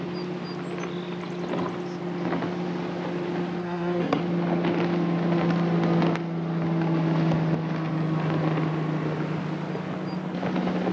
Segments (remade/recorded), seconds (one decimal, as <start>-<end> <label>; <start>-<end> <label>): 0.0-3.6 recorded; 3.6-4.2 remade; 4.2-10.9 recorded